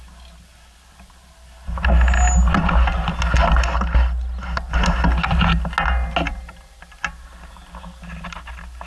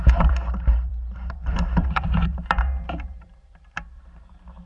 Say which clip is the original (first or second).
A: first